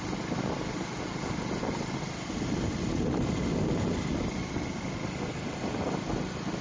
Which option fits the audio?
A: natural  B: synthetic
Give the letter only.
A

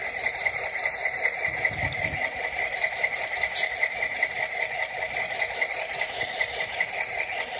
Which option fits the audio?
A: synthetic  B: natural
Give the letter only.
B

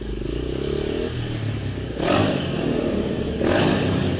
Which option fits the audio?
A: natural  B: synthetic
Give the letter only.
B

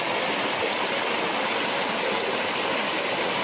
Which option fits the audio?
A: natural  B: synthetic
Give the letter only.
A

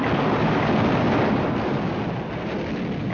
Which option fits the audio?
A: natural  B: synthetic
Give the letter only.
A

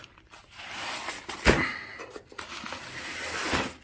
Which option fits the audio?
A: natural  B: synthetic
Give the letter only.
A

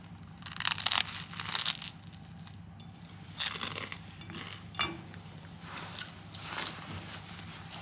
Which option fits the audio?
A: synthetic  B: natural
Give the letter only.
B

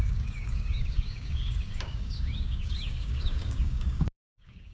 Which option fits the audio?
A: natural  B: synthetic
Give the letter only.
B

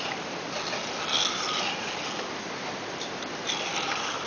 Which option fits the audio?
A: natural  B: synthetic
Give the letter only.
A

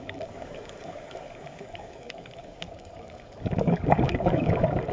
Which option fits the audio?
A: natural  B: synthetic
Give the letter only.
B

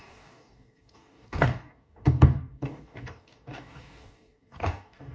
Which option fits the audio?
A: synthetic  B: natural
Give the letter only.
A